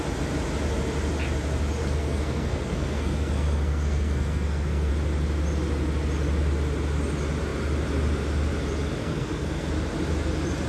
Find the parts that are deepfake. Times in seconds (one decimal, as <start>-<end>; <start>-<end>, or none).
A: 1.8-4.9; 9.0-9.7